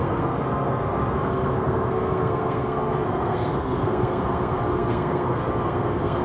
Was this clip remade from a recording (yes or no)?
yes